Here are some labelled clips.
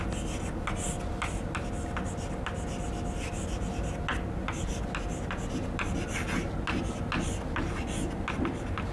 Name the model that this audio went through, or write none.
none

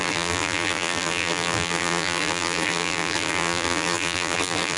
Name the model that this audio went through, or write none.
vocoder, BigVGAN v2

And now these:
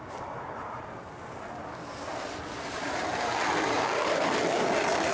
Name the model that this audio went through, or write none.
none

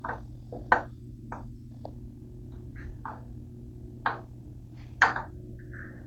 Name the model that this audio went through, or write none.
none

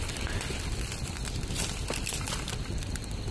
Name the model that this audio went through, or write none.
vocoder, BigVGAN v2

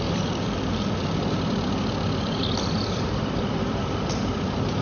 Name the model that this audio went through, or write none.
vocoder, BigVGAN v2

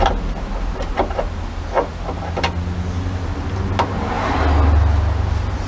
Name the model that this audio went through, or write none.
none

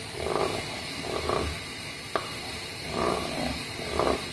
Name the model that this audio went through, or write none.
none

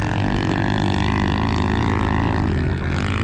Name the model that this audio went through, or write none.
none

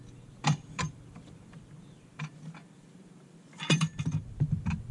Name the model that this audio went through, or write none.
vocoder, BigVGAN v2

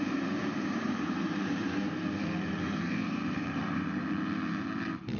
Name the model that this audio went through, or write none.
vocoder, BigVGAN v2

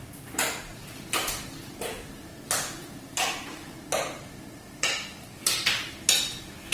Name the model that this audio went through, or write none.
vocoder, BigVGAN v2